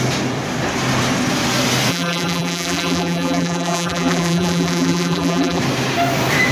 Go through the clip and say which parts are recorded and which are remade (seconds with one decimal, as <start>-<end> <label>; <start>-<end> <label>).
0.0-1.9 recorded; 1.9-5.6 remade; 5.6-6.5 recorded